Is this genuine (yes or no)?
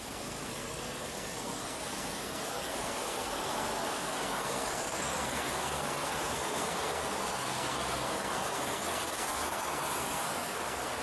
no